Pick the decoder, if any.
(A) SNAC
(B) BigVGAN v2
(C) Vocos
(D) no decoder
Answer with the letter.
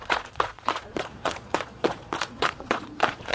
C